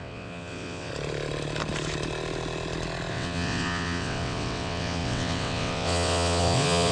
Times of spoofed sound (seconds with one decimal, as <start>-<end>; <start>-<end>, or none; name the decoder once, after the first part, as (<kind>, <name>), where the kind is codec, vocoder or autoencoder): 0.0-0.9 (vocoder, WaveNeXt); 3.1-6.9